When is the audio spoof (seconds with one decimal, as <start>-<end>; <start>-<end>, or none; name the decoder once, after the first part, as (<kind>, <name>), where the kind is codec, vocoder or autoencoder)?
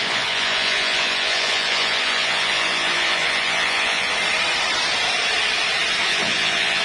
0.0-4.1 (vocoder, Vocos); 6.1-6.8